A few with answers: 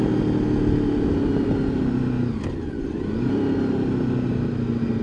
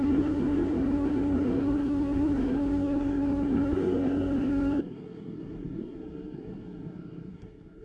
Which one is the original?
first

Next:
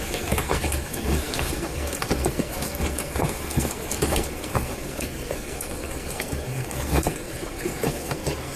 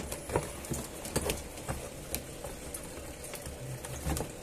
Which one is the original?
second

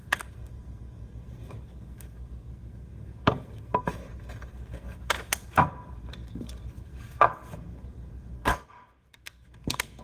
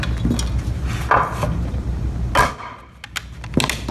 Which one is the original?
second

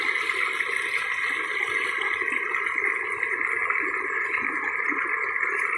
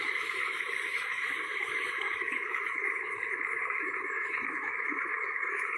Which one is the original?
first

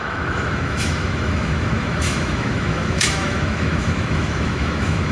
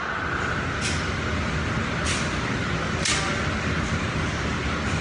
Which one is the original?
second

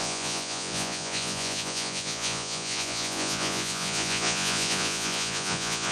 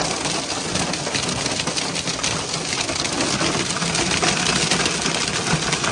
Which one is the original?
second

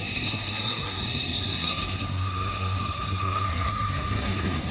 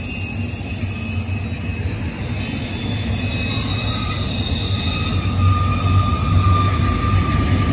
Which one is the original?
second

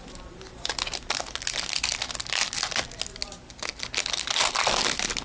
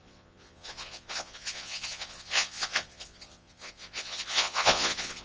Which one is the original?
first